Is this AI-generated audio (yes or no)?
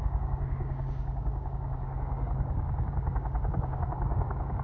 yes